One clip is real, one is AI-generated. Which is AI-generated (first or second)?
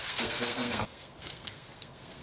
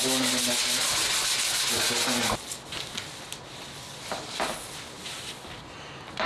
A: first